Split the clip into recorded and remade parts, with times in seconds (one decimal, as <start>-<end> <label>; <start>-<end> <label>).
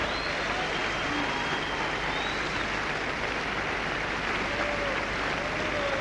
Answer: 0.0-6.0 recorded